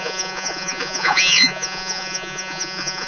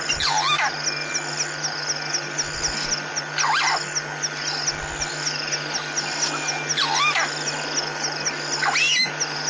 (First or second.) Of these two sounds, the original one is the second